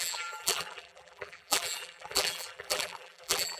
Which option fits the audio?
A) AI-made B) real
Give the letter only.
A